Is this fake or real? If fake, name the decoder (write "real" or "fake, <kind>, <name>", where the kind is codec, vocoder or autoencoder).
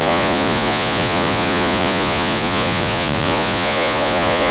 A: fake, vocoder, Vocos